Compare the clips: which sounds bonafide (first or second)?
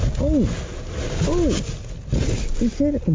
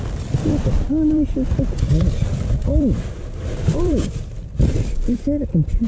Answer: first